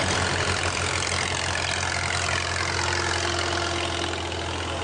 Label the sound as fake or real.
real